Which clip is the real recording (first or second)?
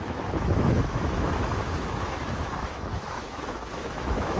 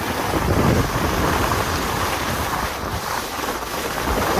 second